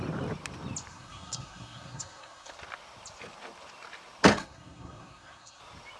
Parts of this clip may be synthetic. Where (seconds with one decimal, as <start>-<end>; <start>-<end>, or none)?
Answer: 0.9-2.5; 4.3-5.6